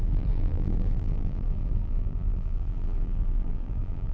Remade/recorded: remade